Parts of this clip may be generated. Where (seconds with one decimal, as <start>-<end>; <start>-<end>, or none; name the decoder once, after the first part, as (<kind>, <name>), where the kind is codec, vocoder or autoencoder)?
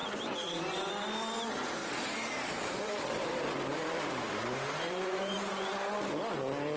1.8-5.9 (vocoder, BigVGAN v2)